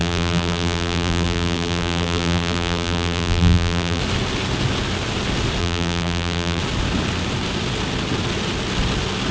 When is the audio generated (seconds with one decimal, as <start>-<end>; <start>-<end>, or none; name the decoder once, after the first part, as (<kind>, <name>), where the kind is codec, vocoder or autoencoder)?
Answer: 0.0-4.0 (vocoder, BigVGAN v2); 5.6-6.6